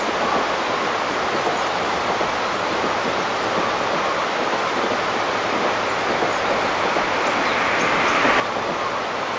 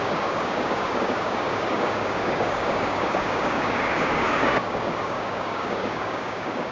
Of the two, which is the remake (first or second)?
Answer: second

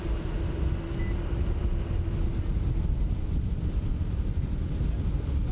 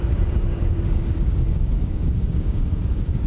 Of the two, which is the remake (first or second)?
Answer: second